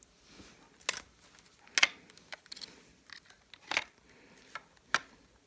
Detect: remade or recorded recorded